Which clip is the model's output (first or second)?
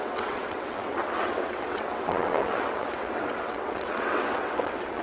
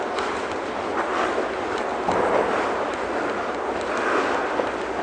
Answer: first